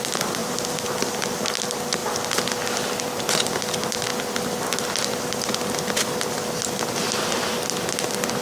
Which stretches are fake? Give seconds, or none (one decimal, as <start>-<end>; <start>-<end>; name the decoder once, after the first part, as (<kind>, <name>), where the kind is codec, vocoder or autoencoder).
0.0-0.4 (vocoder, BigVGAN v2); 1.1-2.0; 3.6-4.1; 7.6-8.4